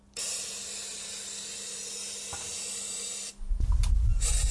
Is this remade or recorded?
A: recorded